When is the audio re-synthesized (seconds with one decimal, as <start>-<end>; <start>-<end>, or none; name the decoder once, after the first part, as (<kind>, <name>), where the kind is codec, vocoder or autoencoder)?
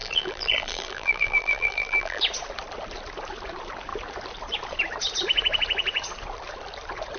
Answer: 0.0-2.2 (vocoder, BigVGAN v2)